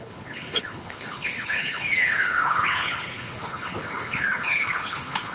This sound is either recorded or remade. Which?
remade